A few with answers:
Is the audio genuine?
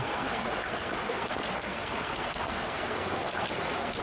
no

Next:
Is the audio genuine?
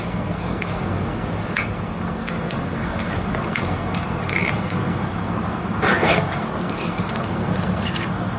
no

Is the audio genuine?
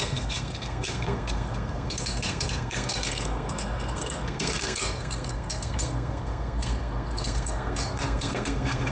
no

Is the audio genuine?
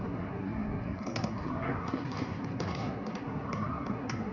no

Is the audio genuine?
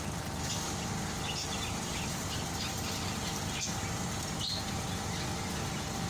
yes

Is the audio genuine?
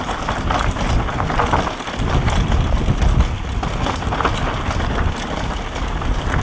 yes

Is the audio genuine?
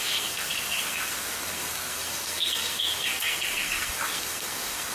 no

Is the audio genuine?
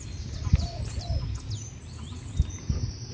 yes